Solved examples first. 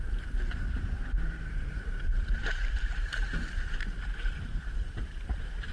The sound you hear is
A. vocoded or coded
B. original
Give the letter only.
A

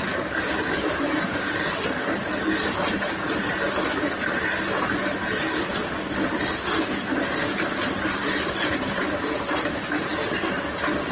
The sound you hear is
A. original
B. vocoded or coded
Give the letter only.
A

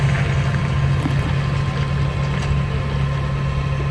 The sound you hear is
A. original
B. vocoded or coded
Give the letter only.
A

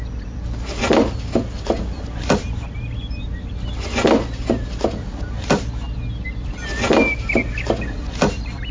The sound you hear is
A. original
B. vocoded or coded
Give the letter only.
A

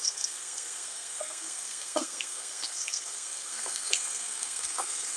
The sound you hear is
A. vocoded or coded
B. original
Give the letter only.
A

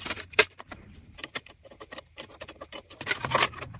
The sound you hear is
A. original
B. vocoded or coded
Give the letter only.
B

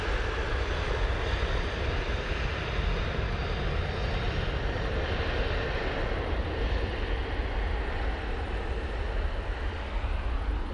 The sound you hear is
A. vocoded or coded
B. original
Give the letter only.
B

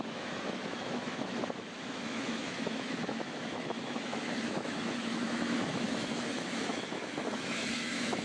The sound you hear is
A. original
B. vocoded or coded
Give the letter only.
B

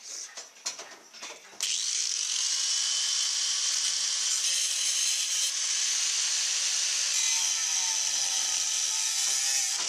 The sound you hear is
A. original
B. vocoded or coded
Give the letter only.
A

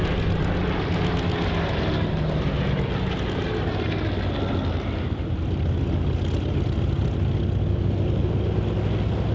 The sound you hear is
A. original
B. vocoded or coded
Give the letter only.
A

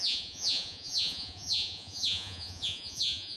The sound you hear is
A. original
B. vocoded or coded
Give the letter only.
B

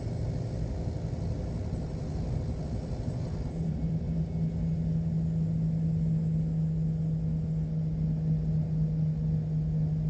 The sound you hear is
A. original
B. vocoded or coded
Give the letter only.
A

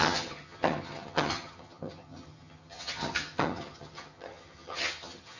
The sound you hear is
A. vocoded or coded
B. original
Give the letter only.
A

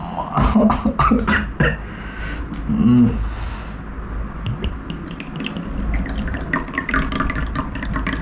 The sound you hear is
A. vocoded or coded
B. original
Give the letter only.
B